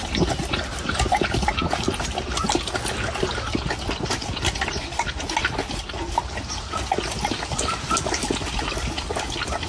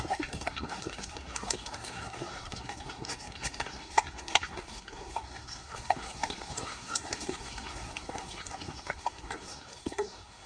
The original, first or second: first